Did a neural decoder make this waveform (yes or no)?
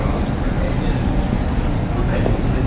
no